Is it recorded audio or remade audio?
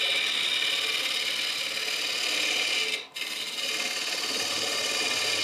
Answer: recorded